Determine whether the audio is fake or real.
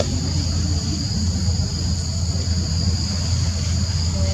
real